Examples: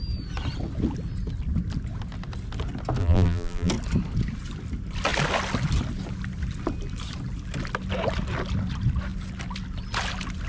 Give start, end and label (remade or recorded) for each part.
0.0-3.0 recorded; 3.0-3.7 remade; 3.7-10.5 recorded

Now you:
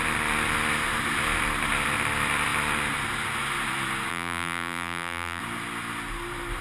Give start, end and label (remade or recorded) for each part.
0.0-4.1 recorded; 4.1-5.4 remade; 5.4-6.6 recorded

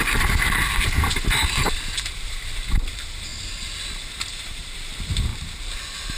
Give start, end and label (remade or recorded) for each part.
0.0-3.3 remade; 3.3-4.1 recorded; 4.1-5.3 remade; 5.3-6.2 recorded